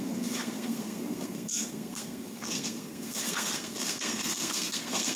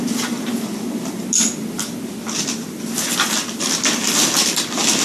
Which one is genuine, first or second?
second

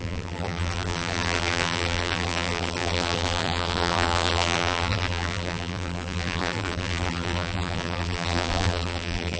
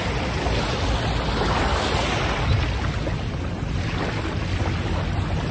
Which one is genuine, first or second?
second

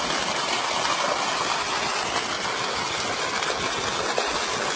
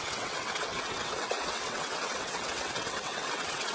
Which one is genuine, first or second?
first